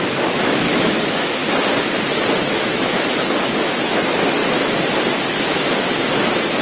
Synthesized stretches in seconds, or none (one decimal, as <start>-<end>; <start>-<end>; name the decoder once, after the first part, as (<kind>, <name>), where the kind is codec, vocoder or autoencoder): 0.0-1.4 (autoencoder, DAC-VAE); 2.4-4.4

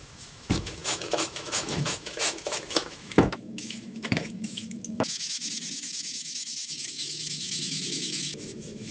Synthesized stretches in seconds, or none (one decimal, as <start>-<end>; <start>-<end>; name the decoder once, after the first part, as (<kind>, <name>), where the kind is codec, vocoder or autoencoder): 0.0-8.9 (autoencoder, DAC-VAE)

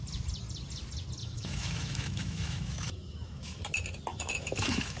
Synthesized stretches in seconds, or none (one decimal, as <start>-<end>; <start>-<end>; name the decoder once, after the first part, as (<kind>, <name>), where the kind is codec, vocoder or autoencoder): 1.2-3.6 (autoencoder, DAC-VAE); 4.1-5.0

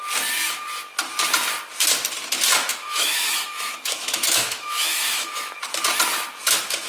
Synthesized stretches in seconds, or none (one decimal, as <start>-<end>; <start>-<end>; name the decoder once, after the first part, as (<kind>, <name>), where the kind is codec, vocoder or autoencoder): 2.7-5.6 (autoencoder, DAC-VAE)